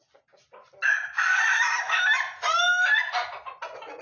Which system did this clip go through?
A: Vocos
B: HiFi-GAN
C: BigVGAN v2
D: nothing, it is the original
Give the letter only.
D